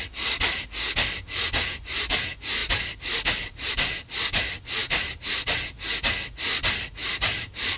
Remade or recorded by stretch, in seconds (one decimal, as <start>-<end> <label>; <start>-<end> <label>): 0.0-2.6 recorded; 2.6-3.7 remade; 3.7-4.8 recorded; 4.8-5.6 remade; 5.6-7.0 recorded; 7.0-7.8 remade